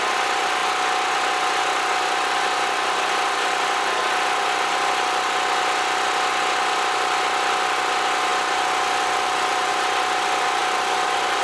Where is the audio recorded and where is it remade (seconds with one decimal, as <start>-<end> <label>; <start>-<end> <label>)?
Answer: 0.0-11.4 recorded